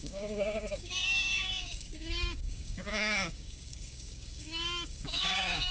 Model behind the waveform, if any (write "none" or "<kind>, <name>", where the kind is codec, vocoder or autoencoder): codec, DAC